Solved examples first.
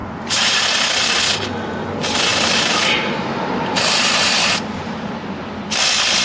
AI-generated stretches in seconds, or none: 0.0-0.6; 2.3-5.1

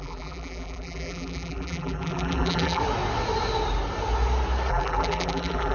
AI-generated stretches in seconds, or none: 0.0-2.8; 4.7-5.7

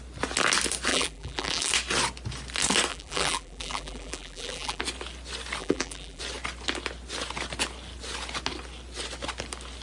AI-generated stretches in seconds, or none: 0.9-1.7; 2.9-4.8; 5.6-6.2

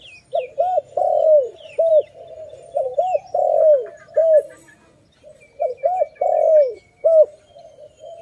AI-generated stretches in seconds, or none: 1.2-1.9

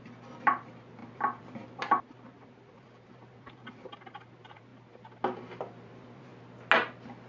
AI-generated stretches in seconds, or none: 0.0-4.7; 5.6-6.3

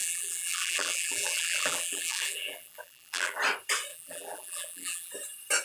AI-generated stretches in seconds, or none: 0.0-3.4; 3.9-5.1